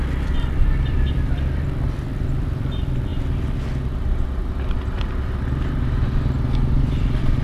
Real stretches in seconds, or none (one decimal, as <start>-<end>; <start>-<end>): 3.1-6.8